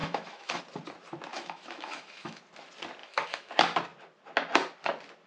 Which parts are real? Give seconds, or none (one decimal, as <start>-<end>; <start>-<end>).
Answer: 0.6-1.3; 2.4-3.0; 3.5-5.3